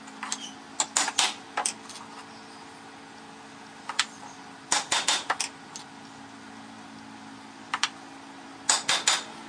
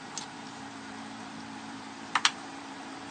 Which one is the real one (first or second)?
first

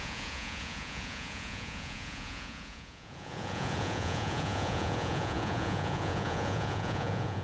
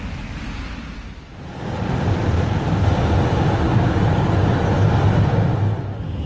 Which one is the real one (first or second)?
second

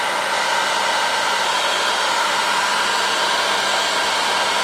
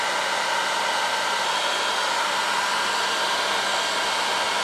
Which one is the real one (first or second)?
second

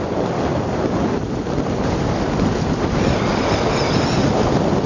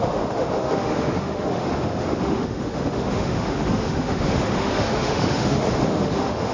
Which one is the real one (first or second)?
first